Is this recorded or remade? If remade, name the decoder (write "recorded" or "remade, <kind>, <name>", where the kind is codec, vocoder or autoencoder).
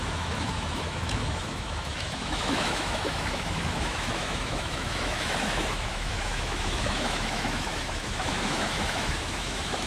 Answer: remade, autoencoder, DAC-VAE